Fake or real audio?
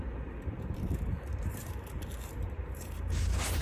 fake